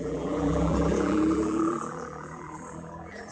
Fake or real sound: fake